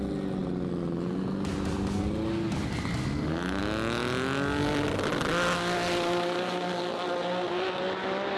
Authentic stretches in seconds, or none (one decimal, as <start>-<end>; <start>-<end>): 0.0-8.4